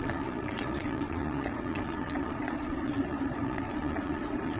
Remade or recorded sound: remade